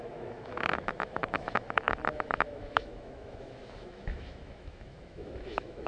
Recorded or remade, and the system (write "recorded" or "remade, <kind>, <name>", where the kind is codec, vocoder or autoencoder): remade, autoencoder, DAC-VAE